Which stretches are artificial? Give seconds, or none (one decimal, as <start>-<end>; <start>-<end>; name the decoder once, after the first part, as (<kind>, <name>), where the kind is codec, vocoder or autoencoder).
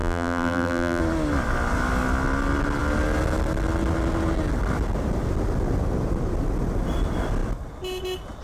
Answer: 0.0-1.0 (vocoder, BigVGAN v2)